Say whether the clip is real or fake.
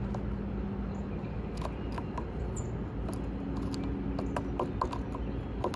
real